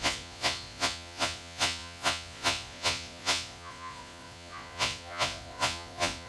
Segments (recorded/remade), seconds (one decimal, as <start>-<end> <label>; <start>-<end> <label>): 0.0-6.3 remade